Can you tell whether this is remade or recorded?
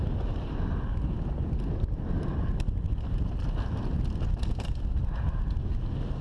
recorded